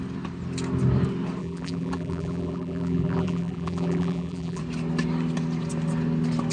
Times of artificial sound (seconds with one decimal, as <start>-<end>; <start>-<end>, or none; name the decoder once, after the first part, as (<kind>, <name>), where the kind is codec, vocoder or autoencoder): 1.4-4.6 (vocoder, BigVGAN v2)